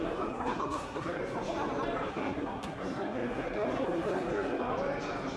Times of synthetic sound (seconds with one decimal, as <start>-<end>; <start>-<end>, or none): 0.0-1.2; 2.1-4.7